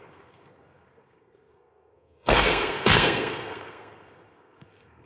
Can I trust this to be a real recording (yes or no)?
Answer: no